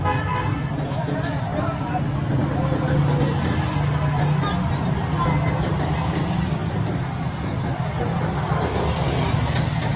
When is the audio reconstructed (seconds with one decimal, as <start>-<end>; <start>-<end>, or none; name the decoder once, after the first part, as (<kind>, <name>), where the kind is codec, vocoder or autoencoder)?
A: none